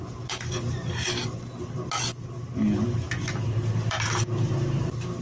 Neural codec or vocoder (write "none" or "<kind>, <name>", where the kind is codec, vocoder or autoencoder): none